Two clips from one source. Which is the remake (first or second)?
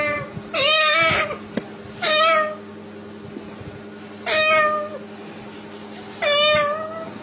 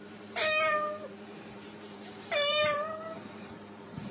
second